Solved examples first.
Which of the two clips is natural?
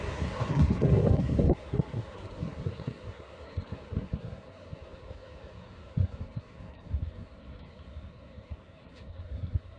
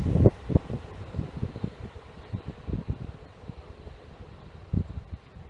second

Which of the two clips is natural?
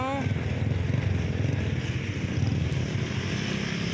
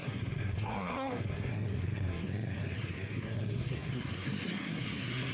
first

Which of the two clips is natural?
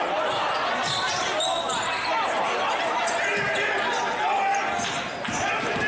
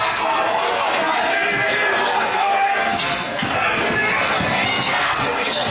first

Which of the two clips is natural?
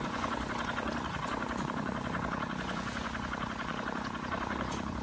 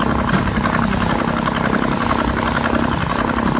second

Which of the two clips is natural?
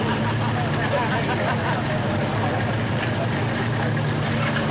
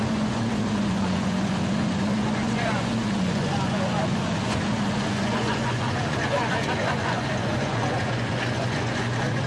first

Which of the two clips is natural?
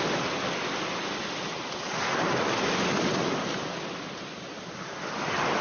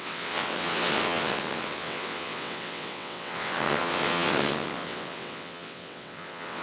first